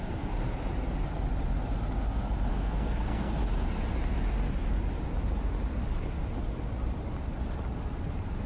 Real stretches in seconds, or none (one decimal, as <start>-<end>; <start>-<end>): 0.0-2.5; 3.4-8.5